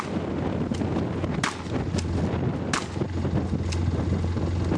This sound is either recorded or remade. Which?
recorded